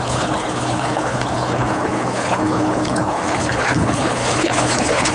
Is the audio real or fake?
fake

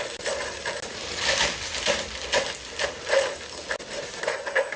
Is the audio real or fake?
real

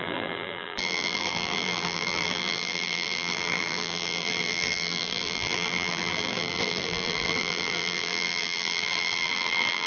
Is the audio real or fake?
fake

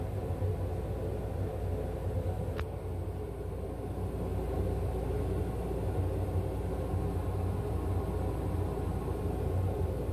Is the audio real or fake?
real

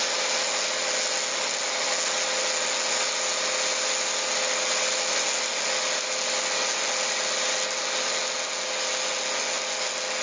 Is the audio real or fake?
real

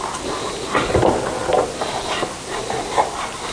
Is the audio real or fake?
real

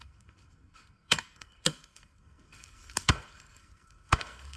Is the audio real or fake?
fake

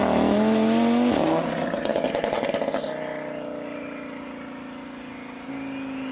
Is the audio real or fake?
real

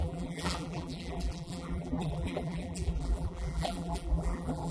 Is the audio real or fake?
fake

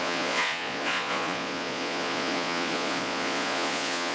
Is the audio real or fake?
fake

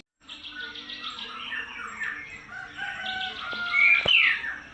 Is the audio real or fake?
real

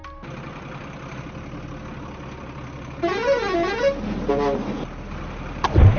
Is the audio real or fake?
real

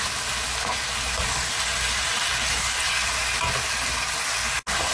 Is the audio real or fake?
real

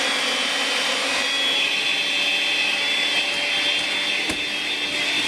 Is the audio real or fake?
real